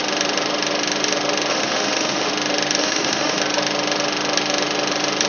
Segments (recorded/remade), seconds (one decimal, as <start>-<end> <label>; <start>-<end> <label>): 0.0-1.5 recorded; 1.5-2.3 remade; 2.3-2.8 recorded; 2.8-3.4 remade; 3.4-5.3 recorded